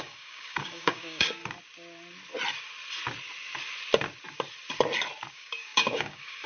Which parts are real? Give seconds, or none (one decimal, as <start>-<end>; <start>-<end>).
1.4-5.3